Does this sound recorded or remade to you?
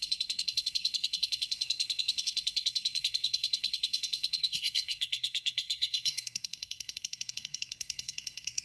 remade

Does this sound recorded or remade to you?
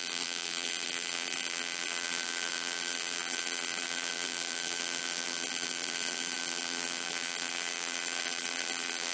remade